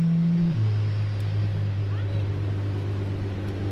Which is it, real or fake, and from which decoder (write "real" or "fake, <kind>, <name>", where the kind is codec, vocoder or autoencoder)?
real